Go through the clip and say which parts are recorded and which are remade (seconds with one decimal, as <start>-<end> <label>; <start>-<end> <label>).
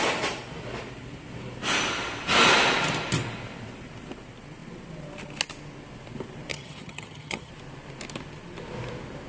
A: 0.0-6.5 recorded; 6.5-7.5 remade; 7.5-9.3 recorded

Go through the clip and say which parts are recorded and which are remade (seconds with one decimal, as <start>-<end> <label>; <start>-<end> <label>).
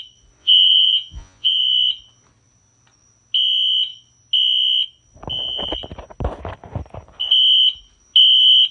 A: 0.0-0.4 recorded; 0.4-1.6 remade; 1.6-8.7 recorded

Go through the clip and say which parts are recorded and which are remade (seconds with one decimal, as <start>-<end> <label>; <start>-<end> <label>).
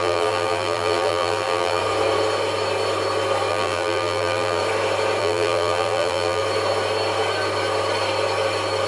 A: 0.0-1.8 remade; 1.8-3.5 recorded; 3.5-4.6 remade; 4.6-5.2 recorded; 5.2-6.4 remade; 6.4-8.9 recorded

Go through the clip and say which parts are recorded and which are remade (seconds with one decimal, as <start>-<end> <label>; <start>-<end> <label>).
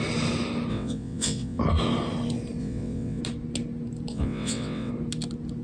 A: 0.0-0.7 recorded; 0.7-1.6 remade; 1.6-2.6 recorded; 2.6-3.2 remade; 3.2-4.1 recorded; 4.1-4.9 remade; 4.9-5.6 recorded